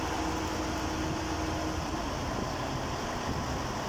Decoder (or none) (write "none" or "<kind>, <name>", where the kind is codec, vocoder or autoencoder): none